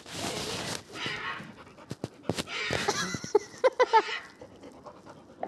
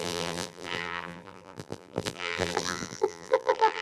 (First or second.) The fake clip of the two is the second